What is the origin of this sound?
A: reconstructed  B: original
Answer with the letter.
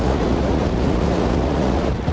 A